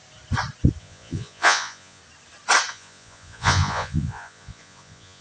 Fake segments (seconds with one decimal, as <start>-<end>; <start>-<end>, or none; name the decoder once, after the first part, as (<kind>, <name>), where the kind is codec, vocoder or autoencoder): 0.8-2.0 (vocoder, Vocos); 2.7-5.2